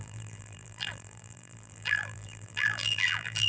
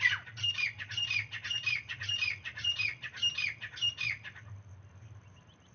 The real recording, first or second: second